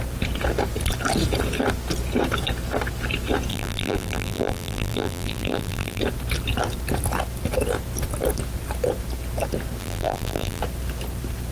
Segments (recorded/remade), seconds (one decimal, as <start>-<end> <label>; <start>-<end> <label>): 0.0-3.5 recorded; 3.5-6.0 remade; 6.0-9.8 recorded; 9.8-10.6 remade; 10.6-11.5 recorded

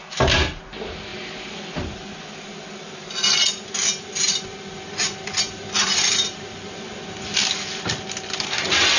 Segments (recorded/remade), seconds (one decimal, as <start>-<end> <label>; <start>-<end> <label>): 0.0-9.0 recorded

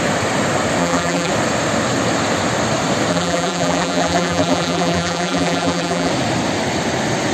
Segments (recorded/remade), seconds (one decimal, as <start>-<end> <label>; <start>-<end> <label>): 0.0-0.8 recorded; 0.8-1.3 remade; 1.3-3.1 recorded; 3.1-6.1 remade; 6.1-7.3 recorded